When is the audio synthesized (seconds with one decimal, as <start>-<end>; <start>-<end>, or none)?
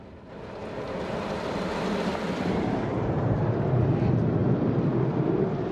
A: 0.0-0.6; 1.3-4.4; 5.1-5.7